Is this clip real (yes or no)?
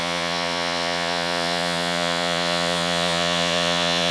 no